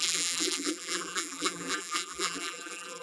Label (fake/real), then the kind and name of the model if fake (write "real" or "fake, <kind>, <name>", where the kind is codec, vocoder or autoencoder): fake, vocoder, BigVGAN v2